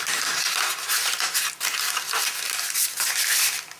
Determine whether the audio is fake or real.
real